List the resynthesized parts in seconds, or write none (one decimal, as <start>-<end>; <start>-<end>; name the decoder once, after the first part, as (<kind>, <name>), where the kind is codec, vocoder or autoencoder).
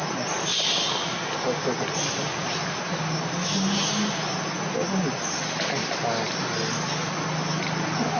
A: none